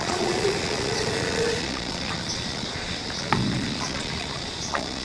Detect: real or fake fake